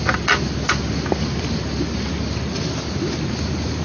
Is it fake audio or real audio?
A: real